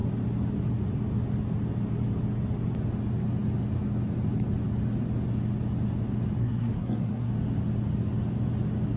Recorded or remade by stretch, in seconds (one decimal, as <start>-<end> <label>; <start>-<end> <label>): 0.0-6.4 recorded; 6.4-7.3 remade; 7.3-9.0 recorded